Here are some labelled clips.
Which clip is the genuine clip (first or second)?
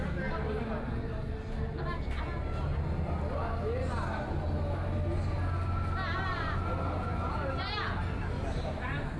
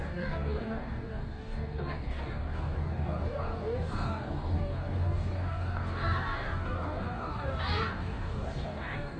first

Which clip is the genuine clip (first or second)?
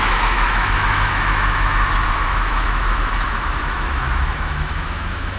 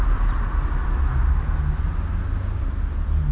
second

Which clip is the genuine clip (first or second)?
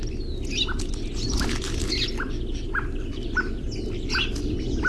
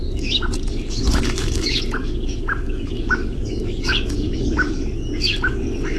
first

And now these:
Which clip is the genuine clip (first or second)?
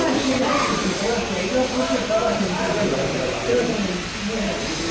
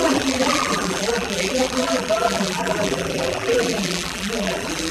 first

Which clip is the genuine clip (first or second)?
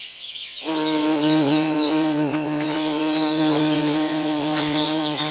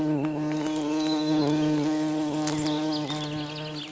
second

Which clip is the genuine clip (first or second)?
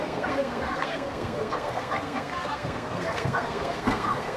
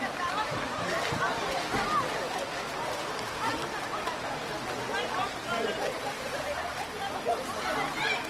second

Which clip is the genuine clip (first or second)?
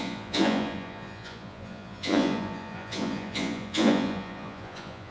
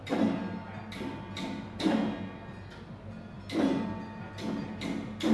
second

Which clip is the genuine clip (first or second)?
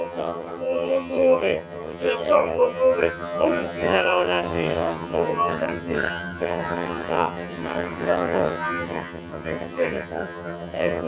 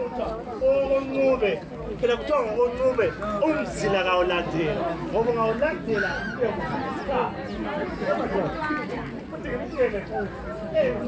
second